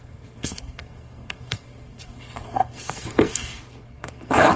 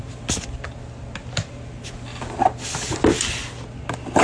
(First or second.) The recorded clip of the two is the second